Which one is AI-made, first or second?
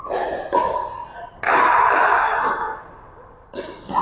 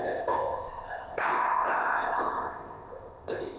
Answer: second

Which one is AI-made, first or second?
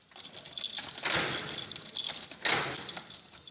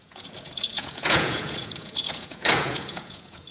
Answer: second